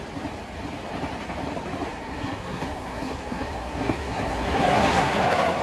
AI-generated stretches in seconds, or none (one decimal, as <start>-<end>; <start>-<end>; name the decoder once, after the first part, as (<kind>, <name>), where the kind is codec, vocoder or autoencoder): 1.9-5.6 (codec, SNAC)